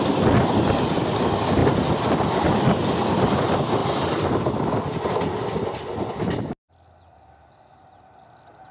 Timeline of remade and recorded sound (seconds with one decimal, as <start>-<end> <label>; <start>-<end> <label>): 0.0-8.7 recorded